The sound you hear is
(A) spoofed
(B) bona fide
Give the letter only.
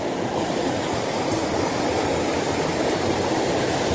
B